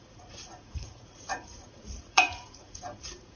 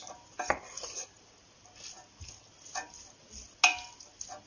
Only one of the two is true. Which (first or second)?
second